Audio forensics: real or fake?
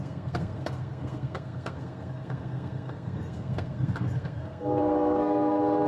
fake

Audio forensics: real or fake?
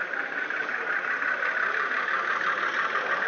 fake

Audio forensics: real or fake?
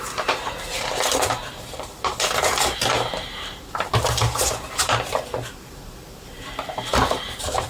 fake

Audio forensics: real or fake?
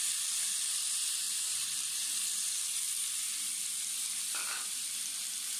fake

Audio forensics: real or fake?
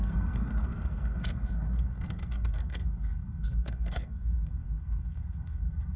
fake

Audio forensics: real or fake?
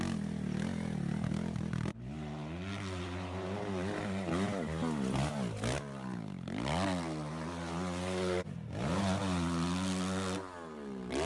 real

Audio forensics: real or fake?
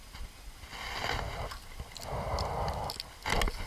real